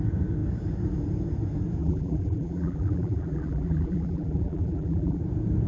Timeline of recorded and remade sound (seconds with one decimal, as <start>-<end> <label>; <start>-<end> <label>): 0.0-1.8 recorded; 1.8-5.2 remade; 5.2-5.7 recorded